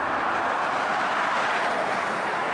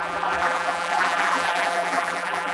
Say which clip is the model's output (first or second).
second